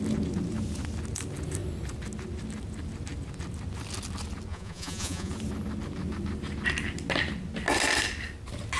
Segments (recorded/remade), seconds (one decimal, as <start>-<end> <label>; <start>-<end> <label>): 0.0-4.5 recorded; 4.5-5.3 remade; 5.3-8.8 recorded